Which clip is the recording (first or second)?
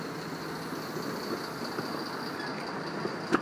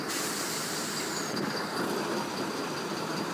first